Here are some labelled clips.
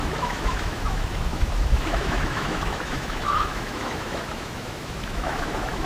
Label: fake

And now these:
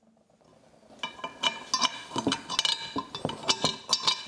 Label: real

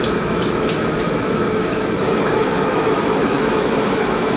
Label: fake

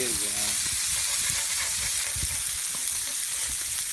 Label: real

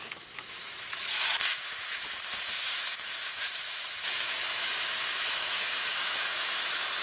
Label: fake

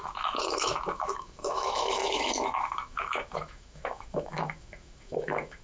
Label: fake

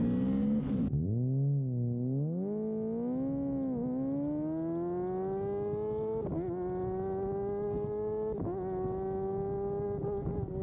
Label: real